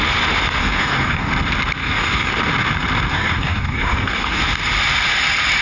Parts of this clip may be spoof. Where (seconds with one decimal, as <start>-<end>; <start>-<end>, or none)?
0.6-1.3; 1.8-2.3; 3.1-4.4

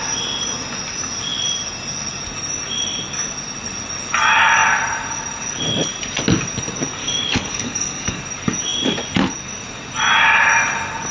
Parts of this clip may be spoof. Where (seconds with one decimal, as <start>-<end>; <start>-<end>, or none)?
7.0-8.2